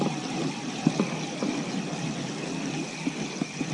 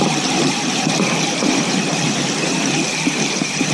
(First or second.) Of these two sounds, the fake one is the second